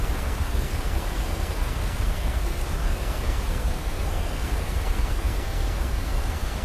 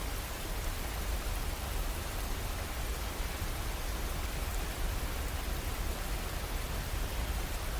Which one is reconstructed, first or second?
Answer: first